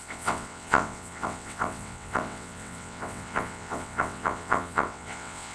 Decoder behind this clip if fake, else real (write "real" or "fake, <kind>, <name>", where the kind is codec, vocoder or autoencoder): fake, vocoder, WaveNeXt